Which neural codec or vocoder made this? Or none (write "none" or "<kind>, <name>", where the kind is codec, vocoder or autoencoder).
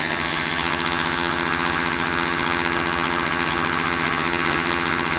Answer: vocoder, HiFi-GAN